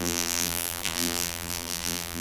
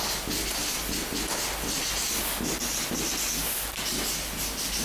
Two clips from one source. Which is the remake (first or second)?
first